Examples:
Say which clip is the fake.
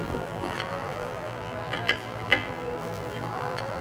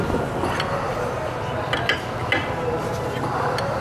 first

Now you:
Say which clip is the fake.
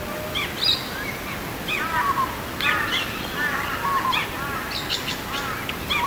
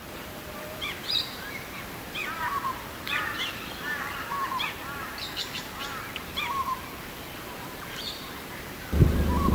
second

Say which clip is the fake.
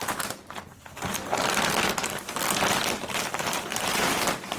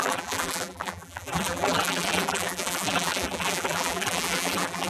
second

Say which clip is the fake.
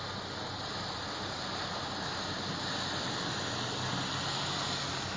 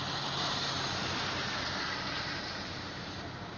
second